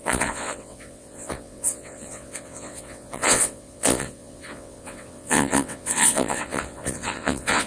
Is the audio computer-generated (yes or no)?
yes